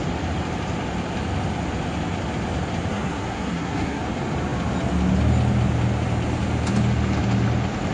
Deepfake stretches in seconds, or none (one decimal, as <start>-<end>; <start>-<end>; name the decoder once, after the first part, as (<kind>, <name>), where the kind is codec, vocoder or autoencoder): 2.9-4.0 (codec, SNAC)